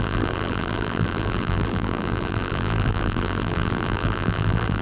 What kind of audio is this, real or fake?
fake